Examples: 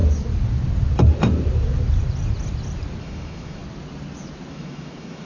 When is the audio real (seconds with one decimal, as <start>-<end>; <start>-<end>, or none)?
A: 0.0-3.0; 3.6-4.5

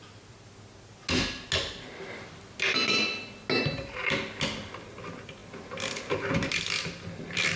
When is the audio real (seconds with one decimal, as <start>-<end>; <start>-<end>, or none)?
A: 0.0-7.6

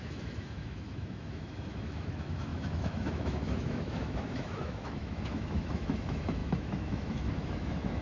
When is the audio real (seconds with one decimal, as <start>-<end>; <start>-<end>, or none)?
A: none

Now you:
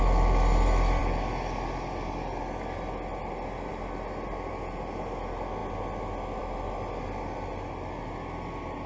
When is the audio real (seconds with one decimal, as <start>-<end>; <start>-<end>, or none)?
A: 0.0-8.9

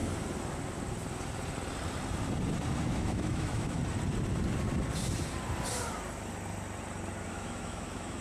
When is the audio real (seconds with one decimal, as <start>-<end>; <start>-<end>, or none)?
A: 0.0-2.8; 3.8-7.3

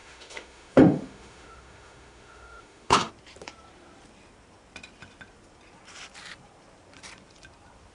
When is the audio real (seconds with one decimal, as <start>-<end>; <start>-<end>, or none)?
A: 3.1-7.9

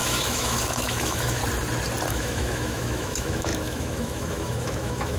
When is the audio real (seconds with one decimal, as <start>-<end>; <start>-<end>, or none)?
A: 1.4-2.1